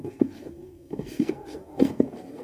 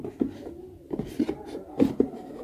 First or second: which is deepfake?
first